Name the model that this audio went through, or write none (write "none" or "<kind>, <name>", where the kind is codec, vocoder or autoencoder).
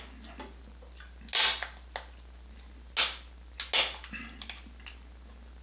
none